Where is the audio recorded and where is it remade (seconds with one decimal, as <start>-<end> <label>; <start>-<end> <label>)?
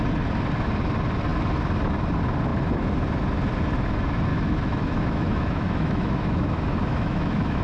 0.0-4.3 recorded; 4.3-7.6 remade